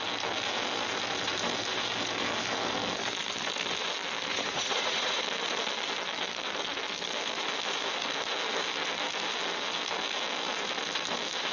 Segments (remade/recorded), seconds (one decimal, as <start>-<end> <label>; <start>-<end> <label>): 0.0-4.3 recorded; 4.3-5.2 remade; 5.2-11.5 recorded